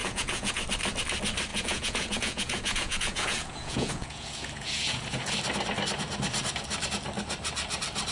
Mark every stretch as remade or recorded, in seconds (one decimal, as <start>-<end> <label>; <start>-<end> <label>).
0.0-0.6 remade; 0.6-1.5 recorded; 1.5-5.3 remade; 5.3-8.1 recorded

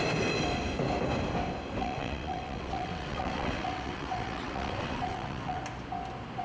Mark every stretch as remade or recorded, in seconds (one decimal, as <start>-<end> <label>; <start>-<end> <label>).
0.0-1.8 recorded; 1.8-5.6 remade; 5.6-6.4 recorded